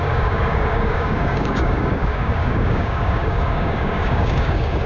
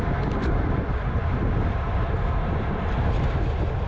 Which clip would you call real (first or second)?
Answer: second